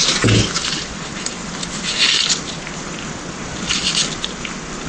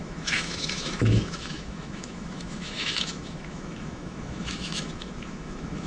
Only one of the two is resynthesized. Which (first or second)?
second